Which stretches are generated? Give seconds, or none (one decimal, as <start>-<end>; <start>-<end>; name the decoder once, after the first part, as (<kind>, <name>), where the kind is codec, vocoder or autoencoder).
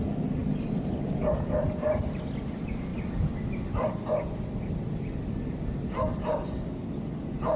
0.4-1.7 (vocoder, BigVGAN v2)